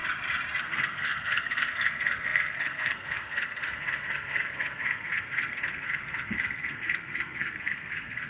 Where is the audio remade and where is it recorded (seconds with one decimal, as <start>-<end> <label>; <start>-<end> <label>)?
0.0-0.6 recorded; 0.6-8.3 remade